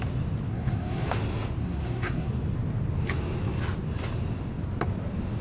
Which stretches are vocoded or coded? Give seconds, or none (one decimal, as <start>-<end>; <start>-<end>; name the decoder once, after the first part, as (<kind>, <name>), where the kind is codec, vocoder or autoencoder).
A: 0.5-1.1 (codec, SNAC); 1.6-2.3